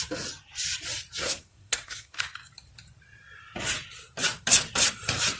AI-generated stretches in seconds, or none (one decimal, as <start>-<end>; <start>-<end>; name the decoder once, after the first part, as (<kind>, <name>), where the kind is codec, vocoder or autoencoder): 1.2-2.2 (codec, SNAC)

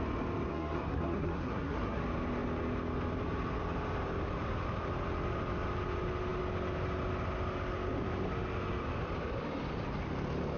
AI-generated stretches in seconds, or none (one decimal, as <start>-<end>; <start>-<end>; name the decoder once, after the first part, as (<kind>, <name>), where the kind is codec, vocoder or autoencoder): 0.5-2.0 (codec, SNAC)

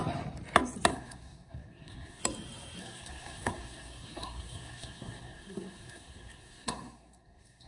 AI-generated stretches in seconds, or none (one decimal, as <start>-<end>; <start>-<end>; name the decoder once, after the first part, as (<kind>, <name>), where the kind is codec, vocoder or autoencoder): 0.9-2.2 (codec, SNAC); 2.8-7.7

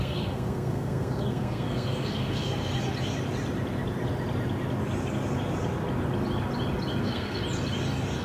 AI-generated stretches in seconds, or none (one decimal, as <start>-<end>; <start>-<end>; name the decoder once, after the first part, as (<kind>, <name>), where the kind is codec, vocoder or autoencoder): 0.0-2.7 (codec, SNAC); 7.0-7.4

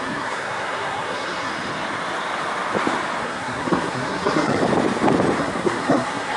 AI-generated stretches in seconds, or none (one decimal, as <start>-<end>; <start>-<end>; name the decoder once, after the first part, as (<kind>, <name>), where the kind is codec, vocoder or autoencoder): 0.0-1.5 (codec, SNAC); 3.2-4.6; 5.4-6.4

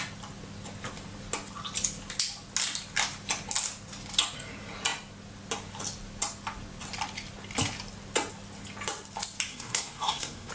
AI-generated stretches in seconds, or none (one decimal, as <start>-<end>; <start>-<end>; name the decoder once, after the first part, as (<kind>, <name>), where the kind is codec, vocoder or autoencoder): 9.5-10.5 (codec, SNAC)

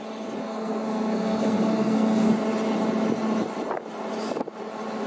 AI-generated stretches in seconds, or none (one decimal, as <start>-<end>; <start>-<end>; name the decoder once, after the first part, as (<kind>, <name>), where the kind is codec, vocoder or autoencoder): 0.4-2.3 (codec, SNAC)

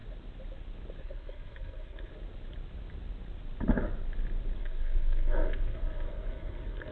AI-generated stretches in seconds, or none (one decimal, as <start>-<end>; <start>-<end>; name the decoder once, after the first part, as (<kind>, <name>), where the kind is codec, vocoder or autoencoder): 1.0-2.1 (codec, SNAC); 4.6-6.9